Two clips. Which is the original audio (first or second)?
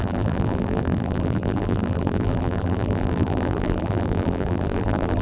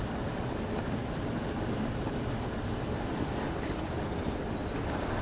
second